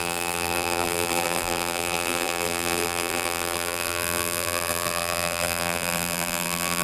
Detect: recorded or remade remade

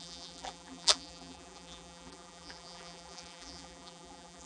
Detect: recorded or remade remade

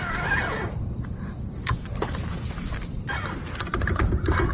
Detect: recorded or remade recorded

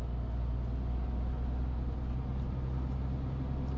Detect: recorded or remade recorded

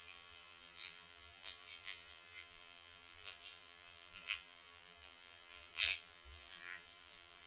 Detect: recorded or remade remade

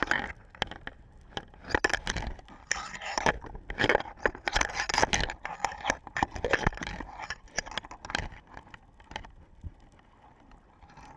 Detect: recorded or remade recorded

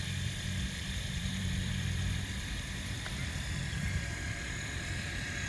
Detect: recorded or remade remade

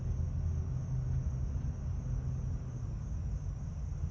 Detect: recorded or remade recorded